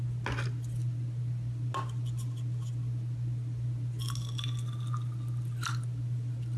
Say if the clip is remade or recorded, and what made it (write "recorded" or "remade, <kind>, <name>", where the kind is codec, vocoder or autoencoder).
recorded